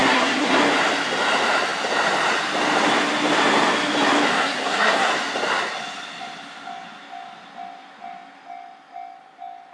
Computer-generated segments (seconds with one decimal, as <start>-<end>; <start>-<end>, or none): 0.0-0.6; 4.3-5.1